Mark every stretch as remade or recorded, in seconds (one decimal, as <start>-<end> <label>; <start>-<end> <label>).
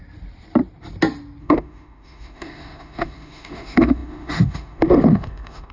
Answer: 0.0-1.4 recorded; 1.4-5.7 remade